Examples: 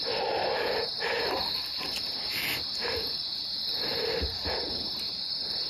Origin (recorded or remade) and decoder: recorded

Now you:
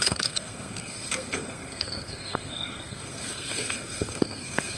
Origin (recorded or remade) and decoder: remade, codec, SNAC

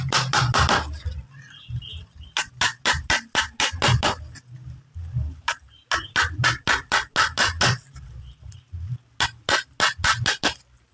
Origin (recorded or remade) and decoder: recorded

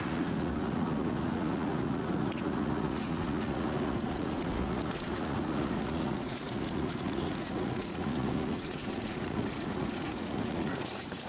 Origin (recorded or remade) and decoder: remade, vocoder, Vocos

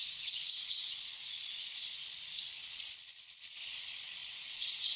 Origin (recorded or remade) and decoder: remade, vocoder, Vocos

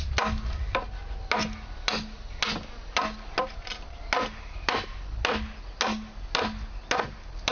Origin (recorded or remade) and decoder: recorded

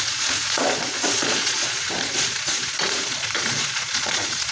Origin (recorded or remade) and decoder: remade, vocoder, Vocos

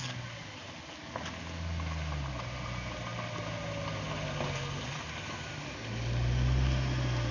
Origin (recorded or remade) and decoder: recorded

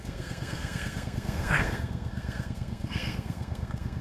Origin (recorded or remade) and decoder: remade, codec, SNAC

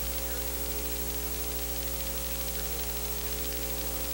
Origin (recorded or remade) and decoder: recorded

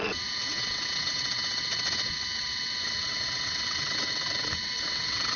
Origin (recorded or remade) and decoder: remade, vocoder, WaveNeXt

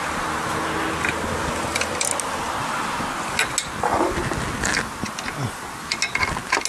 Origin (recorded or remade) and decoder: recorded